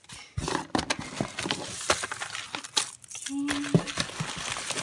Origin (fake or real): real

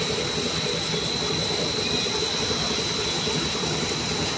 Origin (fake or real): real